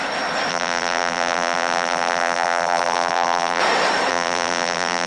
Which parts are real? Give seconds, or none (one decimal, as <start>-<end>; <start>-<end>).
0.0-0.5; 3.6-4.1